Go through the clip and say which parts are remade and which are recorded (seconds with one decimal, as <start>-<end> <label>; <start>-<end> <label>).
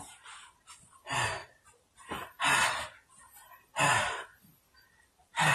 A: 0.0-5.5 remade